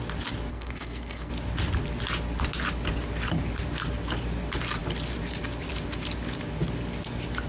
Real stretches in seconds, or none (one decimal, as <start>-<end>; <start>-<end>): 0.0-0.5; 1.3-7.5